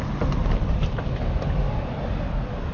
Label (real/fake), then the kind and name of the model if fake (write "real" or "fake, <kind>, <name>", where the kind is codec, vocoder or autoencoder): real